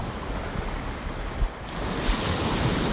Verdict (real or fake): real